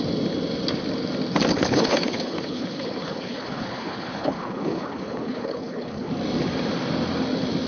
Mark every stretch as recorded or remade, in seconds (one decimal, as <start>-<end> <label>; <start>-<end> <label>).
0.0-1.5 recorded; 1.5-6.1 remade; 6.1-7.7 recorded